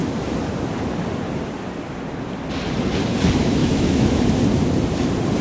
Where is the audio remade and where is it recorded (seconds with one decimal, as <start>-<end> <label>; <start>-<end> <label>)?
0.0-3.6 recorded; 3.6-4.2 remade; 4.2-5.4 recorded